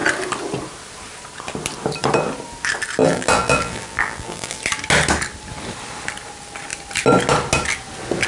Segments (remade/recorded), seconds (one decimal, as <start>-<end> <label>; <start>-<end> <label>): 0.0-3.0 recorded; 3.0-4.6 remade; 4.6-8.3 recorded